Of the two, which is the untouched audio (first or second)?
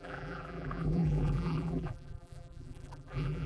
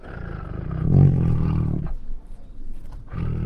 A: second